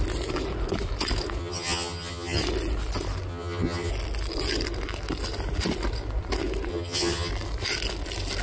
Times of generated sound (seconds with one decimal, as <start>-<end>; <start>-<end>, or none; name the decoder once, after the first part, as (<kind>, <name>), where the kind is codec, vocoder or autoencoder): 1.4-2.4 (vocoder, HiFi-GAN); 3.3-3.9; 6.7-7.3